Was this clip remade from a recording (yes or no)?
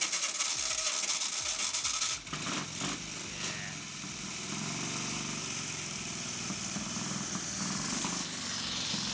no